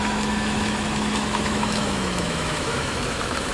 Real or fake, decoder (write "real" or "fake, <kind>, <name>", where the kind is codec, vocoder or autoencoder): fake, autoencoder, DAC-VAE